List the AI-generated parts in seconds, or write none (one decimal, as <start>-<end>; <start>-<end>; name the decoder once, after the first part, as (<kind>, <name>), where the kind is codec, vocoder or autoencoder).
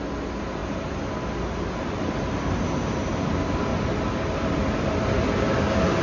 none